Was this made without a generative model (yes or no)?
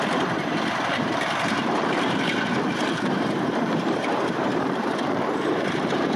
no